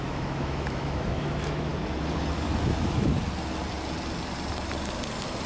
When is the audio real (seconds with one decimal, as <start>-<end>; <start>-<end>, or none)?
1.7-2.6; 3.1-5.5